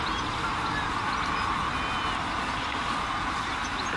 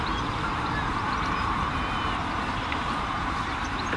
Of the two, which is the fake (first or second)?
second